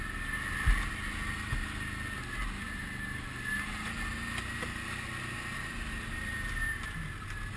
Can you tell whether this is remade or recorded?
recorded